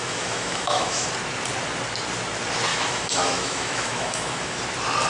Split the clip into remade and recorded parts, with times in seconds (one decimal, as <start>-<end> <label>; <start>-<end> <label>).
0.0-1.1 remade; 1.1-2.7 recorded; 2.7-4.6 remade; 4.6-5.1 recorded